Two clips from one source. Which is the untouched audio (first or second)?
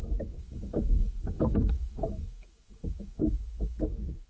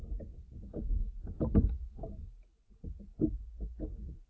second